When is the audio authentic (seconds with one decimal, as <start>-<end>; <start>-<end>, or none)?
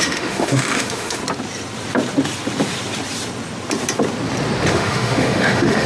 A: 1.2-4.7